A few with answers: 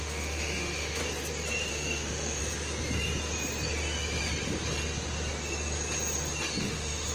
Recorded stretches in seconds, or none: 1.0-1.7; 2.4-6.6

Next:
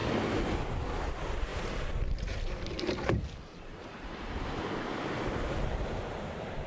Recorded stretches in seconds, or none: 0.0-1.0

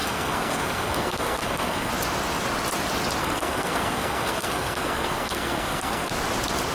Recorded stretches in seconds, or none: 1.9-3.2; 6.1-6.7

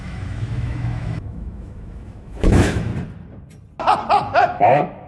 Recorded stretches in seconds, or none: 2.9-4.5

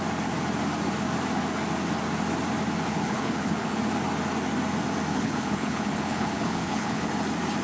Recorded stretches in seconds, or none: 0.0-2.9; 3.8-5.1; 7.1-7.6

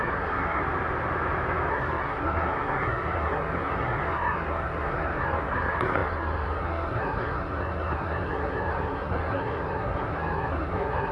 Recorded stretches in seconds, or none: 0.6-1.7